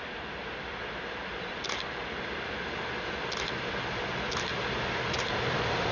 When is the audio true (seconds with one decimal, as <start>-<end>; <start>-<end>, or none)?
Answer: 0.4-3.9